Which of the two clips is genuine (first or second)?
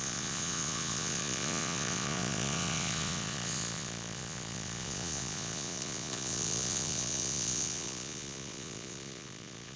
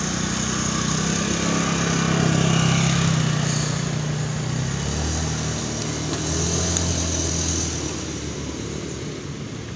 second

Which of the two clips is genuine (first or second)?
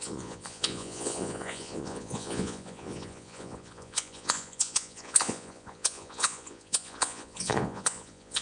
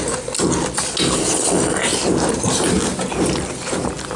second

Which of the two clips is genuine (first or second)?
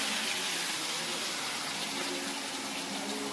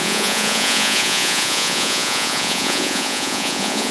first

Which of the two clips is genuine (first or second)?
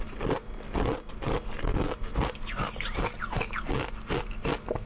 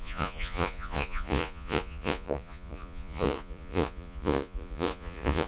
first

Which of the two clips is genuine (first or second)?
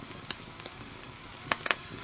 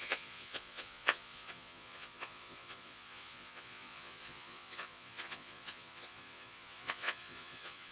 first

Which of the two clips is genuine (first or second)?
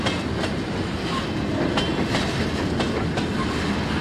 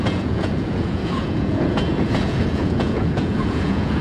first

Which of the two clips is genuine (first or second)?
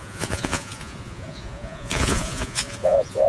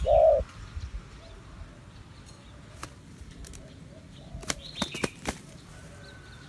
second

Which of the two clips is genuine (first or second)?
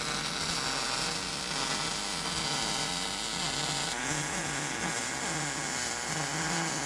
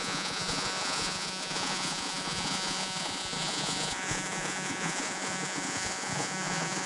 first